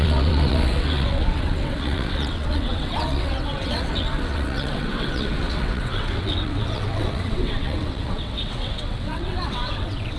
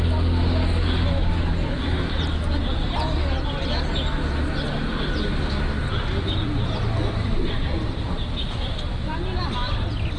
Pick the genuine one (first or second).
second